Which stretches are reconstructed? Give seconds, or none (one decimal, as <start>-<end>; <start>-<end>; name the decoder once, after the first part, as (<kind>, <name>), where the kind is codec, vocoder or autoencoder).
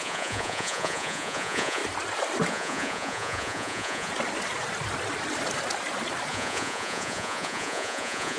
0.0-1.8 (vocoder, Vocos); 2.5-4.1; 6.3-8.4